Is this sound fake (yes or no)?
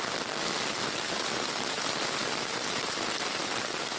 no